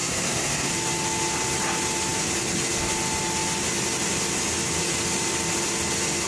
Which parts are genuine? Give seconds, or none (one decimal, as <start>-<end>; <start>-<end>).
0.7-6.3